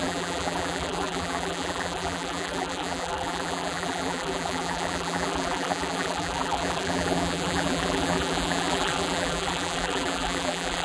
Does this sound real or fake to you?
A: fake